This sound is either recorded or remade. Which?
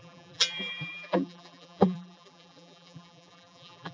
remade